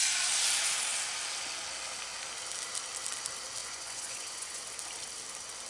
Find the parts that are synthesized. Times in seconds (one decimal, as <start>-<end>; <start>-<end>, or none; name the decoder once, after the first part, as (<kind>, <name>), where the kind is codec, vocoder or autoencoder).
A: 3.6-4.6 (vocoder, Vocos)